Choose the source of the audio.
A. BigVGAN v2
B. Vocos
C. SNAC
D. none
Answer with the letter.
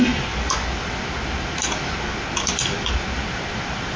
D